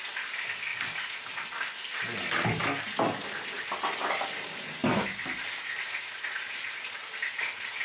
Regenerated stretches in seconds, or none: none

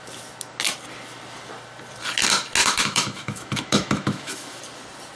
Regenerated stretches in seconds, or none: 2.6-4.6

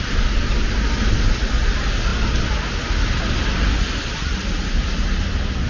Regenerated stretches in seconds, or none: none

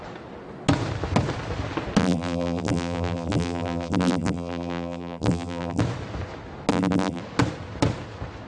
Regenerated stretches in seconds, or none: 2.0-5.8; 6.7-7.2

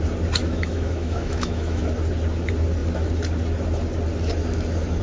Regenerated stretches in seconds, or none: 0.4-1.8

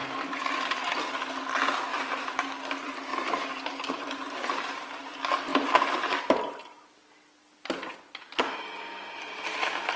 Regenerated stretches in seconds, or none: 1.9-2.4

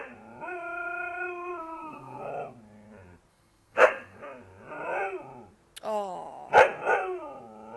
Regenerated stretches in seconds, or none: 1.6-2.3; 3.3-4.2